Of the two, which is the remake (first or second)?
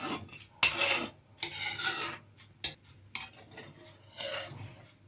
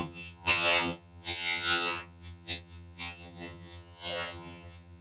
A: second